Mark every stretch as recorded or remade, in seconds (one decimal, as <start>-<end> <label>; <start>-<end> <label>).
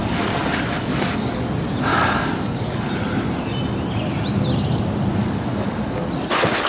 0.0-1.3 remade; 1.3-1.9 recorded; 1.9-2.9 remade; 2.9-5.2 recorded; 5.2-6.0 remade; 6.0-6.7 recorded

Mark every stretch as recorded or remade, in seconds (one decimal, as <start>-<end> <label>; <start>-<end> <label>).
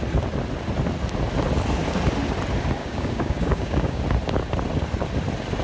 0.0-2.8 recorded; 2.8-4.0 remade; 4.0-5.6 recorded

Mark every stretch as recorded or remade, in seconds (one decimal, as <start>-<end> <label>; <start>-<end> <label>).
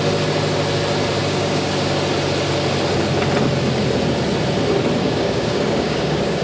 0.0-1.2 recorded; 1.2-1.7 remade; 1.7-5.0 recorded; 5.0-6.4 remade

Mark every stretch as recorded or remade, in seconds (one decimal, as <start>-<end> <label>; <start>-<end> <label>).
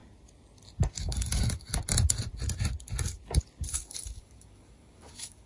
0.0-1.0 recorded; 1.0-1.7 remade; 1.7-3.7 recorded; 3.7-5.5 remade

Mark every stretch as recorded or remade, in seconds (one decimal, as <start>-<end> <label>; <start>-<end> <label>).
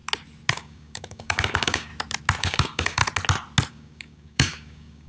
0.0-0.5 recorded; 0.5-1.9 remade; 1.9-2.4 recorded; 2.4-3.0 remade; 3.0-3.7 recorded; 3.7-5.1 remade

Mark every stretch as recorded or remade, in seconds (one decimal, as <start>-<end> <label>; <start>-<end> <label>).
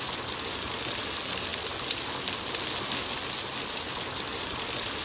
0.0-5.0 recorded